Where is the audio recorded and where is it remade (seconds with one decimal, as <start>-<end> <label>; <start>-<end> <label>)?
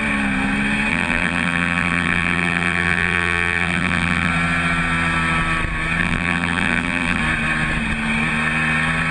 0.0-0.9 recorded; 0.9-4.3 remade; 4.3-6.0 recorded; 6.0-7.2 remade; 7.2-9.1 recorded